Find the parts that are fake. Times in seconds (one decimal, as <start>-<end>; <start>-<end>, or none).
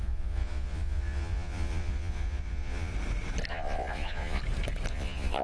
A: 0.0-2.9; 3.5-4.4; 4.9-5.4